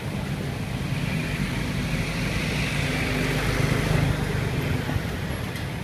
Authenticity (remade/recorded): recorded